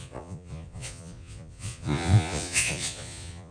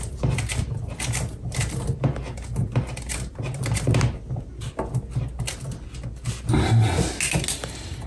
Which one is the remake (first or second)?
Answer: first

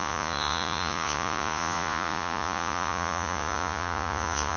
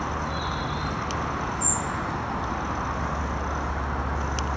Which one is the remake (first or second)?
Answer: first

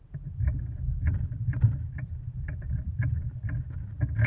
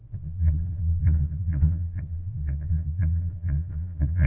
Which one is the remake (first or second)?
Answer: second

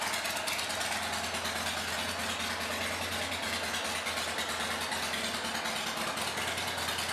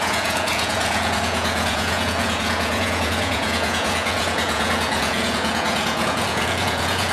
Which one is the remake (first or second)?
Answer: second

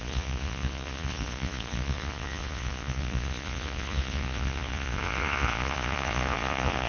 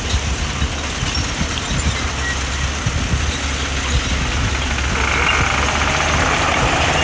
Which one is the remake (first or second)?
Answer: first